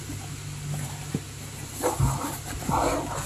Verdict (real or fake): real